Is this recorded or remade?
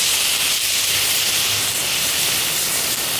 recorded